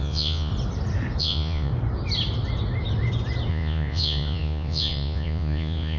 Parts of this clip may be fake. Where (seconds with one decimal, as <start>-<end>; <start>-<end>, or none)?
0.0-0.5; 1.2-1.7; 3.5-6.0

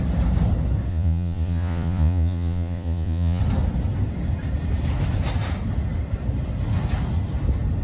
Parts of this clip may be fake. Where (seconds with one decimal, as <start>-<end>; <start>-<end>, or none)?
0.9-3.4

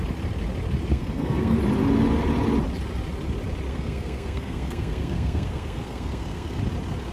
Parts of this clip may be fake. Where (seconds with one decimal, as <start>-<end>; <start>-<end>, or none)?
0.9-1.6; 3.7-6.6

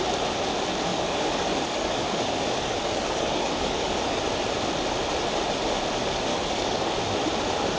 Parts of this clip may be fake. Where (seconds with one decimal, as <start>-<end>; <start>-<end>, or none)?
0.9-4.2; 6.3-7.0

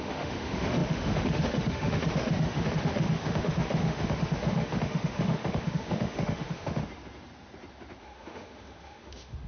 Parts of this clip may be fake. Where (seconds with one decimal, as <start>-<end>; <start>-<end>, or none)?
0.0-6.8; 8.0-9.5

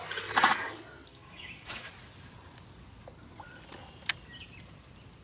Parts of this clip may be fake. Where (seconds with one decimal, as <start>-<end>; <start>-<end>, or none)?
1.1-1.9